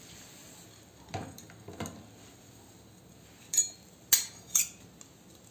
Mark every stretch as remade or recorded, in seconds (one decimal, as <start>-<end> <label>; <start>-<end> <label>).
0.0-5.5 recorded